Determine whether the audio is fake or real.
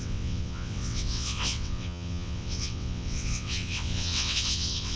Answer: fake